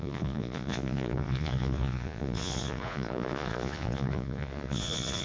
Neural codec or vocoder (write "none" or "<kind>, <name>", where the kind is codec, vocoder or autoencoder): vocoder, Vocos